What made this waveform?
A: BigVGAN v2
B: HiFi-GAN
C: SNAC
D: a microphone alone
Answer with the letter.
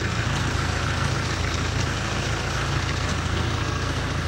C